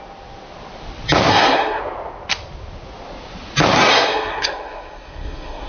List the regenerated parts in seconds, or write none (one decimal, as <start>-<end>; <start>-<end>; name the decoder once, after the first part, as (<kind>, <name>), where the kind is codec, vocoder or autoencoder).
1.3-1.8 (codec, SNAC); 3.9-5.7